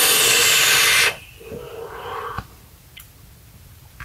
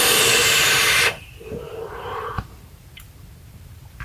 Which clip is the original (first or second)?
first